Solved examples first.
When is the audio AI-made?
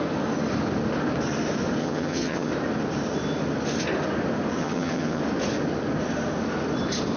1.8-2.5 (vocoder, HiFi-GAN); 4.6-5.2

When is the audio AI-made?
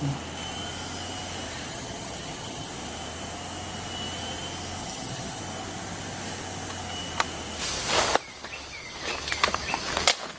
1.7-2.7 (vocoder, HiFi-GAN); 4.8-5.4